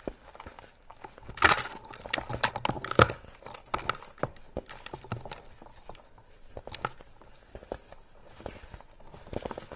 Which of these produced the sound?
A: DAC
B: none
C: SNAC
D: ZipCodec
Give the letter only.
B